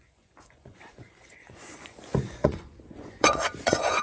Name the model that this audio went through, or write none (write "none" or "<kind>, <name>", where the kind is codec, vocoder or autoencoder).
vocoder, Vocos